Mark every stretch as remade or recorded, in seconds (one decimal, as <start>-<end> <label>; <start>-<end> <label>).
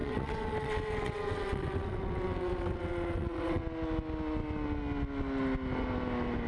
0.0-3.6 remade; 3.6-6.5 recorded